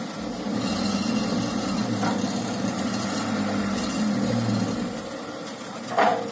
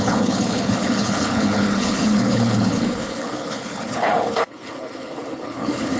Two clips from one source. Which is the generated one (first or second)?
second